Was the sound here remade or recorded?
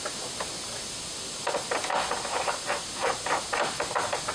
recorded